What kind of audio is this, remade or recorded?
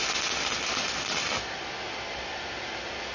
recorded